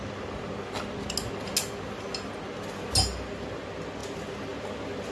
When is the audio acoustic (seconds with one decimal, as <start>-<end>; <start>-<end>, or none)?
0.0-5.1

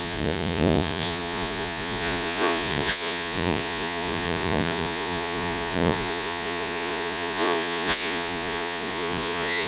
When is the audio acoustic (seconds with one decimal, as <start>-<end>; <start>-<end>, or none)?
none